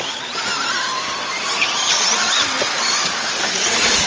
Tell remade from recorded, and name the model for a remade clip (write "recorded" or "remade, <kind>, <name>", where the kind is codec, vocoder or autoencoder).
recorded